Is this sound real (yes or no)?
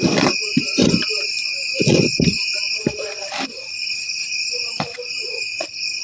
yes